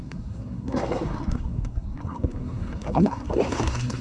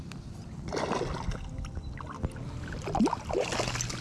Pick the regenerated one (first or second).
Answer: first